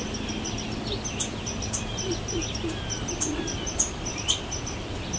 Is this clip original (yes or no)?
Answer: yes